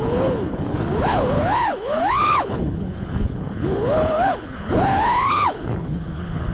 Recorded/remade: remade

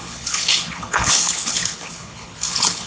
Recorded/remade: remade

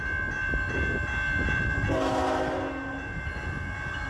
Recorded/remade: recorded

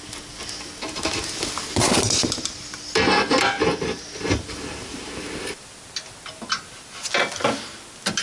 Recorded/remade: recorded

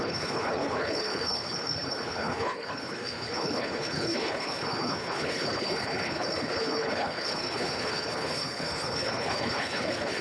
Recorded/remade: remade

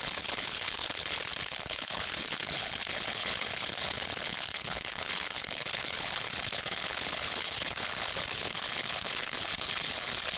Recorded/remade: remade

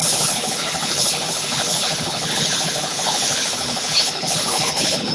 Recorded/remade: remade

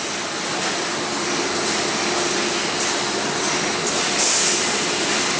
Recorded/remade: recorded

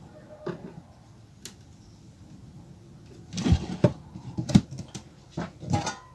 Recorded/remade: recorded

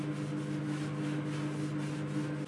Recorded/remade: recorded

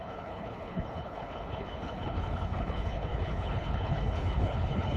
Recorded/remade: remade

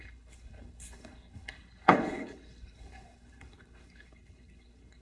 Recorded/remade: remade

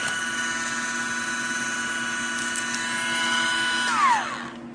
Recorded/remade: recorded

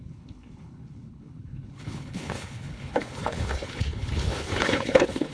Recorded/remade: remade